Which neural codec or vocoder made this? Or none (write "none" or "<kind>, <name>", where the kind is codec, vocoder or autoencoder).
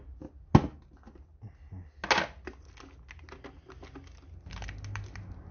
none